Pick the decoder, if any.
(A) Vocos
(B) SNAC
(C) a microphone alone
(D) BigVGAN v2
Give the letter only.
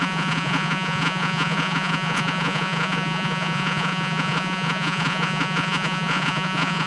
A